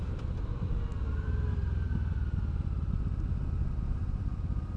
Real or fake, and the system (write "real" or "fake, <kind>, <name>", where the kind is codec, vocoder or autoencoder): real